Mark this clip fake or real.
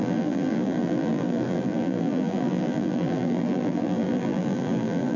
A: fake